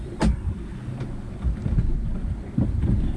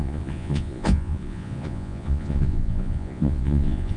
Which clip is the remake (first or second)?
second